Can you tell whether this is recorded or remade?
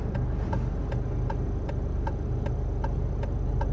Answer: recorded